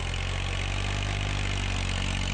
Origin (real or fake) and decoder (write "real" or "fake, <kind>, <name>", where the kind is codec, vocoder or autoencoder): real